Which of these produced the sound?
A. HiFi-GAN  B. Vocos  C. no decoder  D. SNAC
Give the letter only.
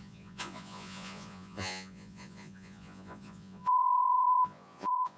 B